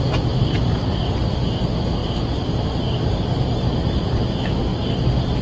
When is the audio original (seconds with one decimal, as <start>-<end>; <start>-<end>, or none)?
0.0-2.0; 4.1-4.7